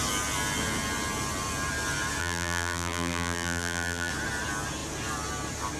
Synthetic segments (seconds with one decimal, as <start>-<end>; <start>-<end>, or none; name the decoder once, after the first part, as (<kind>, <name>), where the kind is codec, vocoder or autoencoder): 2.2-4.1 (vocoder, BigVGAN v2)